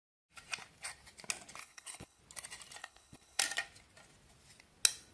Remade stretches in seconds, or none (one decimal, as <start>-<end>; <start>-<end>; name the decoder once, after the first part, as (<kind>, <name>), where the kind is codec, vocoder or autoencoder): 1.6-2.2 (codec, HILCodec); 2.8-3.4